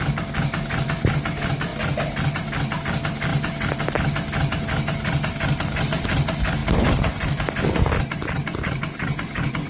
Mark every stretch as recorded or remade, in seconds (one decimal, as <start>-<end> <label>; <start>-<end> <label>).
0.0-9.7 recorded